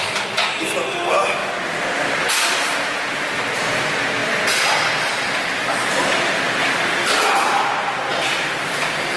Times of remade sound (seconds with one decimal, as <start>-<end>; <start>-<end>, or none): 4.2-5.9; 8.1-8.6